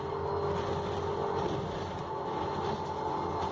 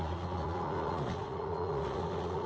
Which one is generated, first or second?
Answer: second